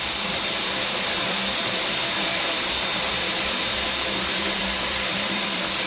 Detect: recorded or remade remade